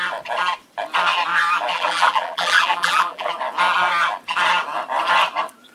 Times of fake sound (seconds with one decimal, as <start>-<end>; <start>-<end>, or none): 1.7-3.3